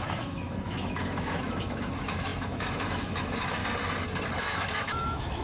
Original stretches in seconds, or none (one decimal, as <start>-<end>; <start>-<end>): 3.6-4.4

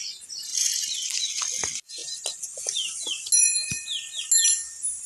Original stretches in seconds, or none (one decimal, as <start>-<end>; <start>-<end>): 0.0-5.1

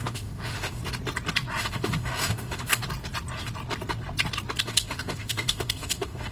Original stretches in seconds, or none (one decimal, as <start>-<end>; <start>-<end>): 0.8-1.6; 2.8-4.6